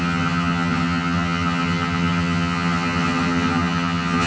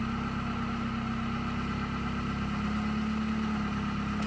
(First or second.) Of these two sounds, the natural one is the second